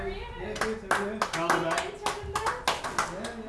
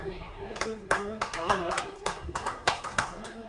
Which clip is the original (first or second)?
first